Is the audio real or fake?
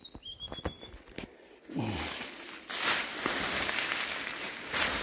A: real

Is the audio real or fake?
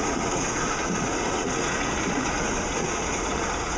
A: fake